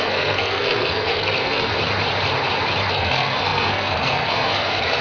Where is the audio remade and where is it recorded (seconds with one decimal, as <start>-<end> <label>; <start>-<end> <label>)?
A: 0.0-1.7 remade; 1.7-2.9 recorded; 2.9-5.0 remade